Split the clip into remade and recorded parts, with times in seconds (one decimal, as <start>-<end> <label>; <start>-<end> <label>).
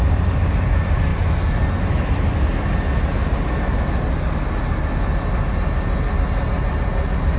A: 0.0-7.4 recorded